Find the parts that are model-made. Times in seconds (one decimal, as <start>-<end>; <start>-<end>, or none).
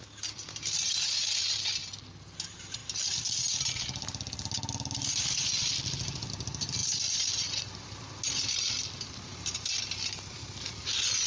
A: none